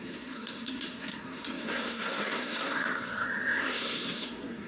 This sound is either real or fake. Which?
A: fake